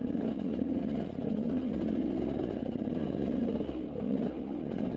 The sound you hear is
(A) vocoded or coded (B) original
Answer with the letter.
A